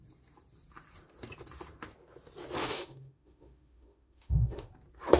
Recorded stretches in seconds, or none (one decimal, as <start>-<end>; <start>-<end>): 0.0-2.6; 4.7-5.2